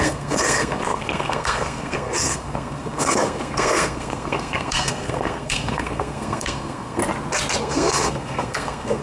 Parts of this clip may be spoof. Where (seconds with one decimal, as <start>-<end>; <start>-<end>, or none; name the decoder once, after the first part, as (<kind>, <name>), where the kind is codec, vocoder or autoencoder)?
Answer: 0.0-7.0 (codec, SNAC); 7.6-9.0